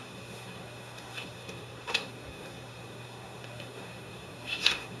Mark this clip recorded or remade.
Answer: remade